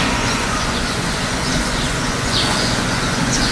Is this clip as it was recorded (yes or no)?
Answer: no